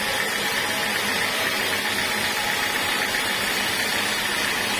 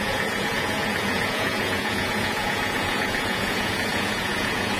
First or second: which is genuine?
first